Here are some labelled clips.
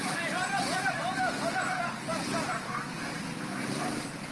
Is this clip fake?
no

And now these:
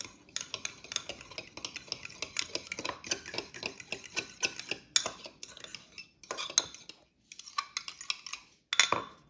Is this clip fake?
no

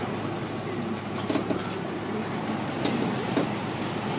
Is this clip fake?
no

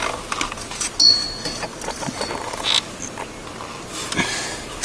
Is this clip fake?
no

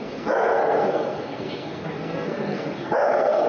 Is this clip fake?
yes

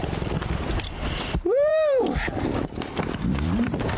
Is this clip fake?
yes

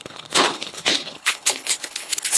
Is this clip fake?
yes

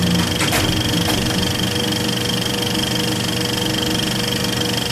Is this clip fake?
no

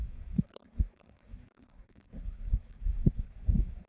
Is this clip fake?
yes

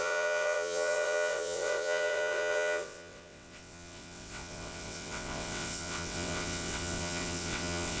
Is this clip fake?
yes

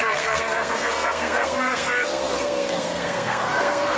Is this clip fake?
yes